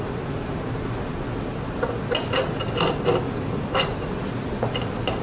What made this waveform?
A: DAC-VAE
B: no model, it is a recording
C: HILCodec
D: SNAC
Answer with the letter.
B